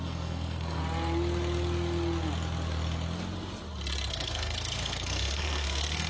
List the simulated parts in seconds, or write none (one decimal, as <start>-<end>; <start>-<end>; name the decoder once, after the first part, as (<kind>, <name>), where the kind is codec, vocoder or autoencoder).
0.0-0.8 (codec, SNAC); 4.1-6.1